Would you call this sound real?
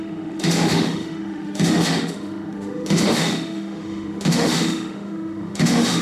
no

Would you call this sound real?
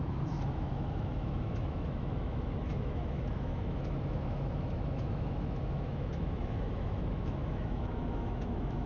no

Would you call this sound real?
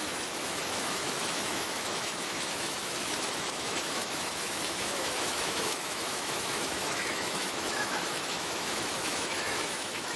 no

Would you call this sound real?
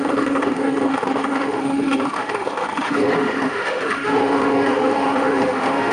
no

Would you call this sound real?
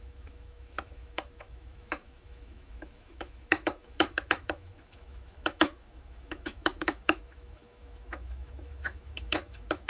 no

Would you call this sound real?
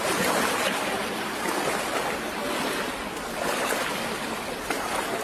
yes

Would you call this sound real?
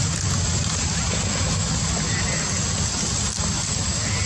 yes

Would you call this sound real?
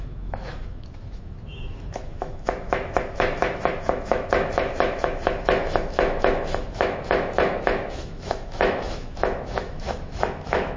no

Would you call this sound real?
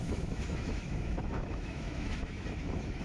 no